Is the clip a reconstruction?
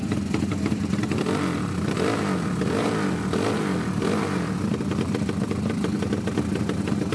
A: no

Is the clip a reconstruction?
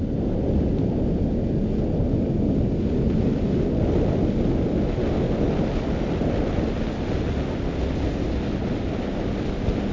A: no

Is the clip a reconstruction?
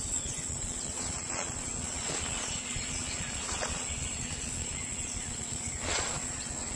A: yes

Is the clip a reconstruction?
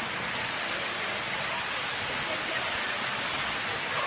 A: no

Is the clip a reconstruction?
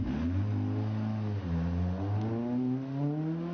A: no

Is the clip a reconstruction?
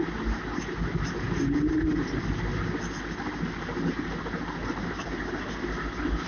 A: no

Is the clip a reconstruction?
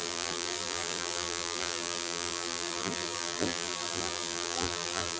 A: yes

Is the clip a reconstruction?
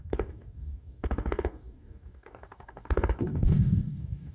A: yes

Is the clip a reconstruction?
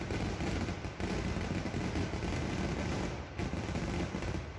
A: no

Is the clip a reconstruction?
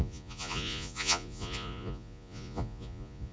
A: yes